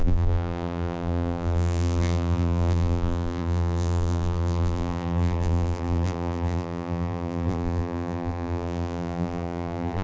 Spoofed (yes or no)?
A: yes